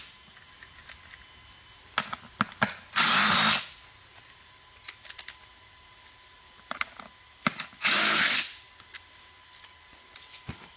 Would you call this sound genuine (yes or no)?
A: yes